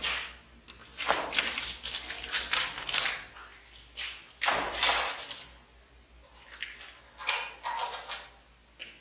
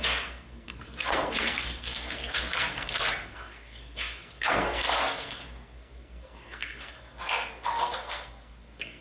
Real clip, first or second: first